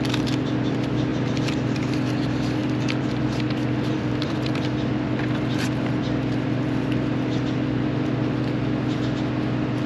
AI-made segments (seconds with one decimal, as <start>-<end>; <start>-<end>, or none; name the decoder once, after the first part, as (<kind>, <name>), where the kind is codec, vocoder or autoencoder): 1.1-1.9 (vocoder, BigVGAN v2); 2.6-5.2